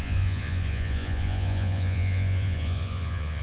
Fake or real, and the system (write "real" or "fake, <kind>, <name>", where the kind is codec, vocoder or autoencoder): fake, vocoder, Vocos